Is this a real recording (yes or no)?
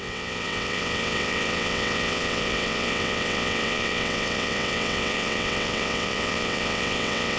no